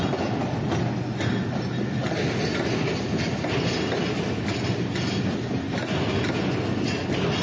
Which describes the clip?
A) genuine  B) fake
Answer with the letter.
A